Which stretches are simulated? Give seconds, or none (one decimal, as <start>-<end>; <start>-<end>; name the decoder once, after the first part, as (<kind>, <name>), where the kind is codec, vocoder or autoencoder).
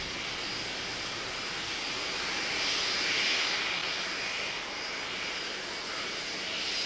none